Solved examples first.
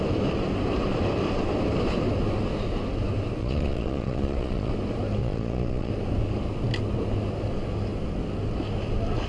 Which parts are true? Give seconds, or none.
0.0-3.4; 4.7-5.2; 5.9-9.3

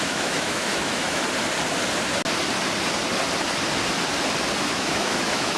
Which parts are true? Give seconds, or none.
1.2-4.6

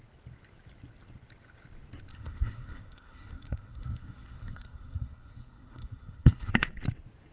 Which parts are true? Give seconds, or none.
0.0-2.1; 6.5-7.3

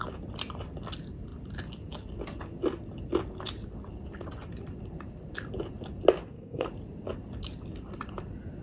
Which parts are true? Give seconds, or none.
0.0-6.2; 6.7-8.6

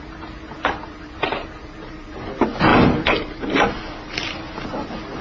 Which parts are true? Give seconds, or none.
0.0-5.2

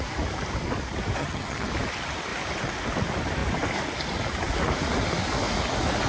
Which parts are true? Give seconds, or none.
0.0-1.2; 1.7-6.1